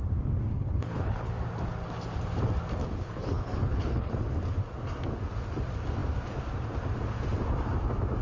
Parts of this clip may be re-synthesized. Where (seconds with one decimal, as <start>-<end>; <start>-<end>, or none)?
0.5-1.3; 2.8-4.1